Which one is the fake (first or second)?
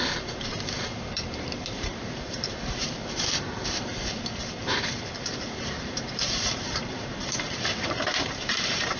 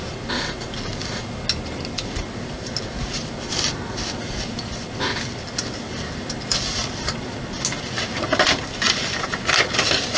first